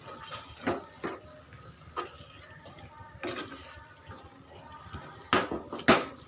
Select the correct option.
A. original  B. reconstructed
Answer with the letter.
A